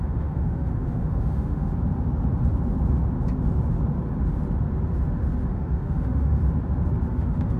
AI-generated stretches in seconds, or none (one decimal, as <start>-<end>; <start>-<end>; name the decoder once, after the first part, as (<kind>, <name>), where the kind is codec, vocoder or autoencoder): 0.0-1.7 (autoencoder, DAC-VAE); 5.5-6.4; 7.1-7.6